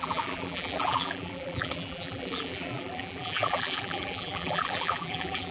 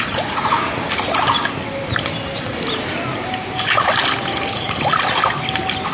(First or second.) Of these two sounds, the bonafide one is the second